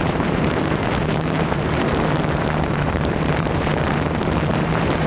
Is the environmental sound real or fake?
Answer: fake